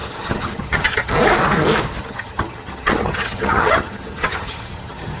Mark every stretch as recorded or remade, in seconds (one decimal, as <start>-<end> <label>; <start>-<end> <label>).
0.0-1.1 remade; 1.1-2.0 recorded; 2.0-5.2 remade